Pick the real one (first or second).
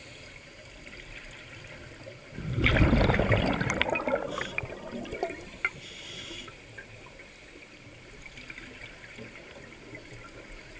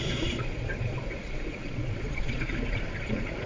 first